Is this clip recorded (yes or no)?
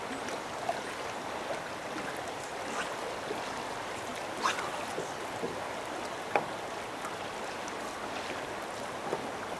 yes